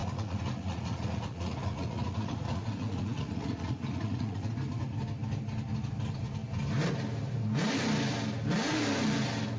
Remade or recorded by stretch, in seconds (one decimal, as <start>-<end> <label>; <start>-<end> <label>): 0.0-4.5 remade; 4.5-9.6 recorded